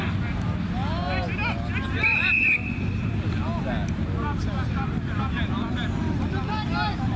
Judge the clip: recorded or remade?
recorded